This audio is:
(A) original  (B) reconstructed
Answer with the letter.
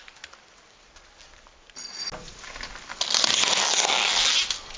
A